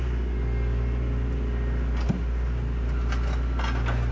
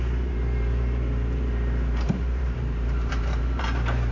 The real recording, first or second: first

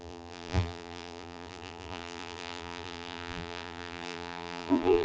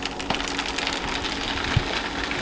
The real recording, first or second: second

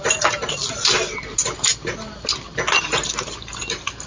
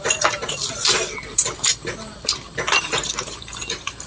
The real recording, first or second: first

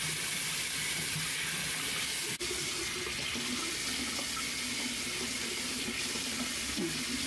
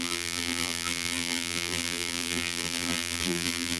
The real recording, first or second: first